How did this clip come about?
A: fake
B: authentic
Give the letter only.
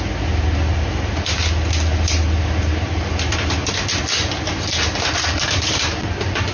B